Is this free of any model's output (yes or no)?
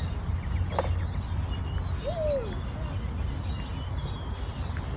yes